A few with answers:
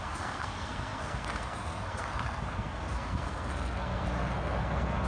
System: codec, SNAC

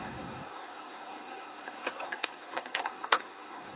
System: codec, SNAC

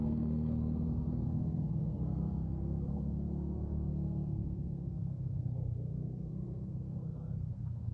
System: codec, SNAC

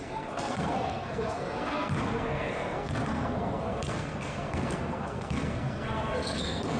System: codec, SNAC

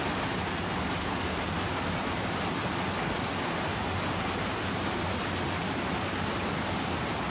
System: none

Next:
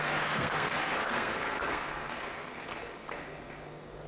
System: codec, SNAC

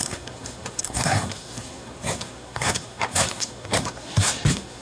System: codec, SNAC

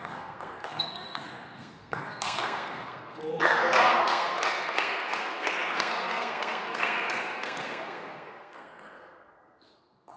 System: codec, SNAC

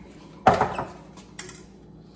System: none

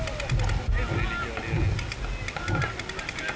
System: none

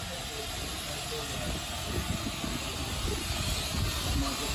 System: none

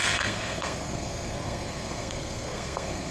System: codec, SNAC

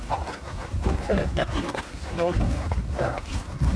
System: codec, SNAC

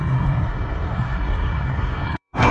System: codec, SNAC